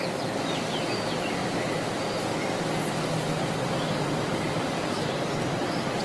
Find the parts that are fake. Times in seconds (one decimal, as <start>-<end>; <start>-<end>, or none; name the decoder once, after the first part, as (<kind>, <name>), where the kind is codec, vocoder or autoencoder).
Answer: 1.4-1.9 (vocoder, BigVGAN v2); 4.3-6.0